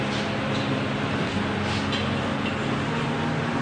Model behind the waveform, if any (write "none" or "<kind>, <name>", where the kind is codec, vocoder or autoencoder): none